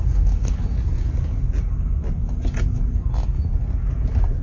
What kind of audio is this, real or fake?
real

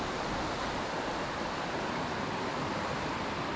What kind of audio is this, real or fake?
real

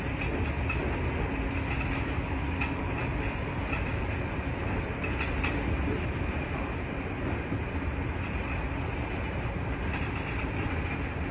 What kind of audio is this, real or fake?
real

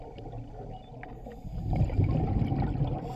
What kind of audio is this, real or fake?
real